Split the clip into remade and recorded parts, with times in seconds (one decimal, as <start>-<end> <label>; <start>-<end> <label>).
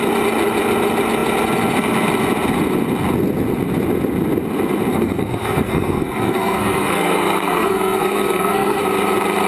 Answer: 0.0-4.9 recorded; 4.9-8.8 remade; 8.8-9.5 recorded